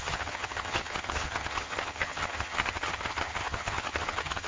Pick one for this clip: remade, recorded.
remade